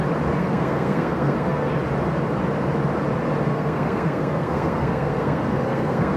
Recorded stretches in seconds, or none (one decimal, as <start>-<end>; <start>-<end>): 0.0-0.4; 1.7-3.5

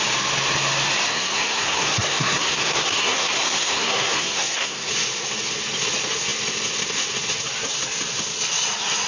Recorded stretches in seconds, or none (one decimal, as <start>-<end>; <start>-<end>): 0.0-1.1; 4.9-9.1

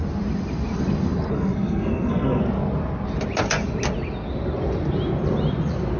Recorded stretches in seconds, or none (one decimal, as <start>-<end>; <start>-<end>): 0.0-1.3; 2.4-6.0

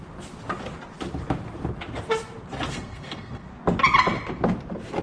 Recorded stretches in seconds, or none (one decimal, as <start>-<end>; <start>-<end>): 0.0-2.7; 3.5-5.0

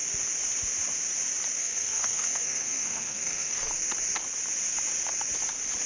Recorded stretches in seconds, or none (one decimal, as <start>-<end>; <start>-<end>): 0.0-1.6; 3.7-5.9

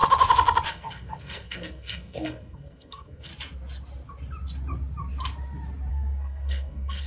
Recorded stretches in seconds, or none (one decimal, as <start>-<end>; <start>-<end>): 0.0-0.7; 3.3-5.9